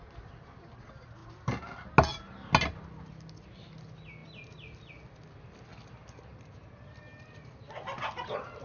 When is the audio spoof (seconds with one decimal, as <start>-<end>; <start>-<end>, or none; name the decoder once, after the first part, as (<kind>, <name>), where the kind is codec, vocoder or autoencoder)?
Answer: none